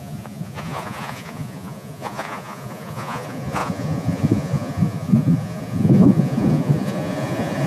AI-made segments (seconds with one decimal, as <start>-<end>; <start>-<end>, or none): 0.0-7.7